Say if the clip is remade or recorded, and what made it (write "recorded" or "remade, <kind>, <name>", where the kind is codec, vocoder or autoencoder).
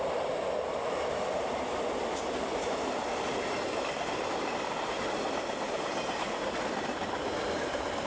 recorded